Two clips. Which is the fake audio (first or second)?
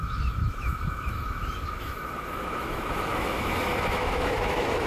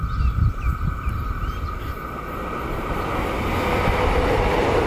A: first